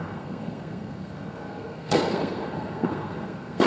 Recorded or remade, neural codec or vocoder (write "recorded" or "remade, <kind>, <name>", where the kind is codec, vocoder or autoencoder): remade, codec, SNAC